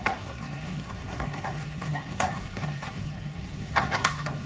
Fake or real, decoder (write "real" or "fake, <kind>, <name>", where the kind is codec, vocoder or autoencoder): fake, codec, SNAC